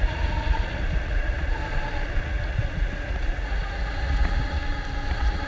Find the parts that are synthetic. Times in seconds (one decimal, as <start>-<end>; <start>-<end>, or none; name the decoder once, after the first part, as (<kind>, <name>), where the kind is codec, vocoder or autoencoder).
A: 0.0-1.6 (vocoder, Vocos); 2.2-4.6; 5.1-5.5